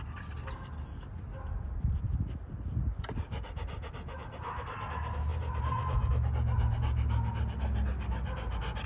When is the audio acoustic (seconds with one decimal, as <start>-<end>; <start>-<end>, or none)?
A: 0.0-5.3; 6.1-8.9